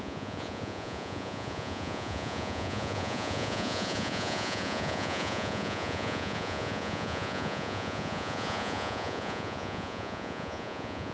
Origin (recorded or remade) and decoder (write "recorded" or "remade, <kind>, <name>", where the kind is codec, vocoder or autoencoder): remade, vocoder, Vocos